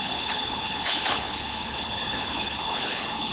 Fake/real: fake